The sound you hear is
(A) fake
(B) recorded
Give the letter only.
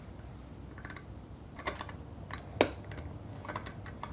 B